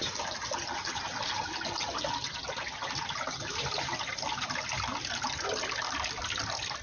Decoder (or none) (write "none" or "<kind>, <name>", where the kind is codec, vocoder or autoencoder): none